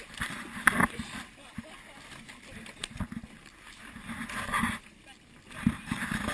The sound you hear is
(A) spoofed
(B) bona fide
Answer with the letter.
B